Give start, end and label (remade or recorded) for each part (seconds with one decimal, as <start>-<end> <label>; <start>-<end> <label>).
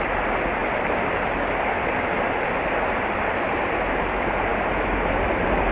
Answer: 0.0-5.7 recorded